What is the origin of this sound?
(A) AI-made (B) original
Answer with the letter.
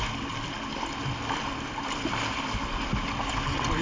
B